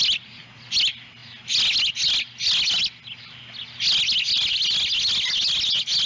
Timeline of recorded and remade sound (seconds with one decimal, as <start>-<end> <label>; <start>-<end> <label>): 0.0-6.1 recorded

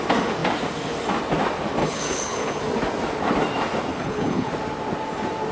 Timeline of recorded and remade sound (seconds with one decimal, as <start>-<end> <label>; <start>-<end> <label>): 0.0-1.8 recorded; 1.8-2.6 remade; 2.6-3.9 recorded; 3.9-4.5 remade; 4.5-5.5 recorded

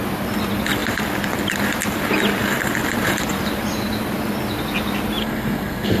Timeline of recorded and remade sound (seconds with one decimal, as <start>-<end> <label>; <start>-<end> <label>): 0.0-5.2 recorded; 5.2-6.0 remade

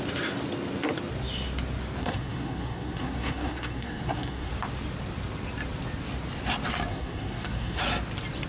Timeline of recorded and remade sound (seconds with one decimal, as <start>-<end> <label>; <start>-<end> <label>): 0.0-2.0 recorded; 2.0-4.5 remade; 4.5-6.9 recorded; 6.9-7.8 remade; 7.8-8.5 recorded

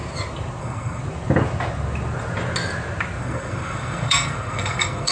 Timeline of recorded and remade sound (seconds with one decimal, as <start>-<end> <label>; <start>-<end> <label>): 0.0-0.6 recorded; 0.6-1.0 remade; 1.0-3.2 recorded; 3.2-5.1 remade